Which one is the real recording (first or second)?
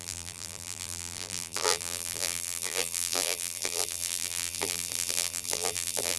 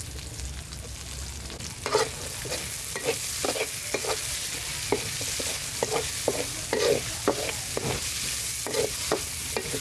second